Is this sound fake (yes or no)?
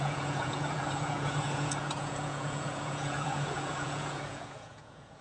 yes